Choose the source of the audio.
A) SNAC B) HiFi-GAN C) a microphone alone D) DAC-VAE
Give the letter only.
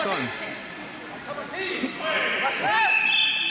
C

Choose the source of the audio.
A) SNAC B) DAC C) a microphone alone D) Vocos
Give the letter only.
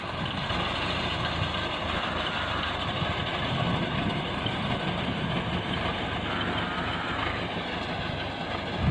C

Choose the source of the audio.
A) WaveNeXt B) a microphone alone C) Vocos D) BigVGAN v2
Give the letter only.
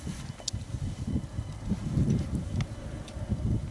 B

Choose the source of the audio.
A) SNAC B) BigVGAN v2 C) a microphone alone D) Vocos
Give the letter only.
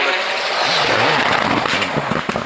C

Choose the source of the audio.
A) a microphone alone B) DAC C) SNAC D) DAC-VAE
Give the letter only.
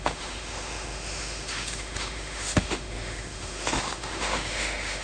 D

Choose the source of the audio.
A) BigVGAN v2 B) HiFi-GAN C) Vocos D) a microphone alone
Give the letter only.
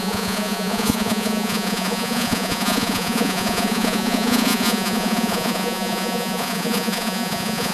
C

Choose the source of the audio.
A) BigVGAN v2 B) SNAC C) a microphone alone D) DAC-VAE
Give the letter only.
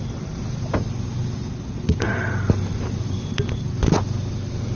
C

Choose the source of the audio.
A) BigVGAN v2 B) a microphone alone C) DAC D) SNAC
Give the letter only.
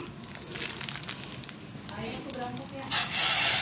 B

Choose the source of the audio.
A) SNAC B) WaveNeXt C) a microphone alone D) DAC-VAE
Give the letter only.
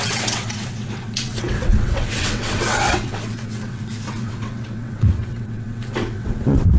B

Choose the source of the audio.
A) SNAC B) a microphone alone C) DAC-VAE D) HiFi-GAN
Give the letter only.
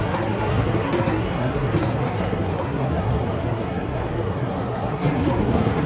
A